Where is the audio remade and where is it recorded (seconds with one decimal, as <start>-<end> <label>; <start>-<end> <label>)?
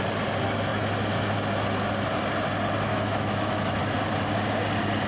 0.0-2.9 recorded; 2.9-3.8 remade; 3.8-5.1 recorded